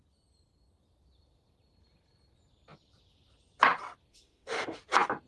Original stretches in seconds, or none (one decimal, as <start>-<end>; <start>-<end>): 0.0-4.1; 4.8-5.3